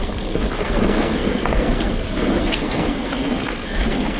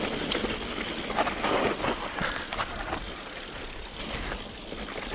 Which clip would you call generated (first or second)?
first